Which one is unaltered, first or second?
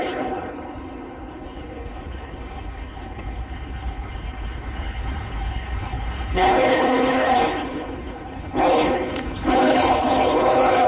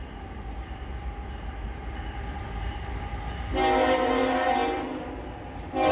second